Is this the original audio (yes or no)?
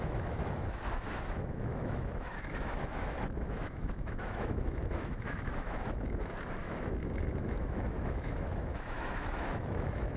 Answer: no